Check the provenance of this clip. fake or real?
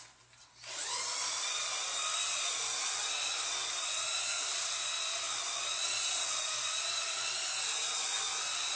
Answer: real